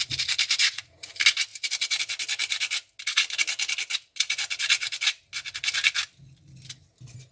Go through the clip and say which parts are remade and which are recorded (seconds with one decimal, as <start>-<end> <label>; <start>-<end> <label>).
0.0-0.6 recorded; 0.6-1.1 remade; 1.1-7.3 recorded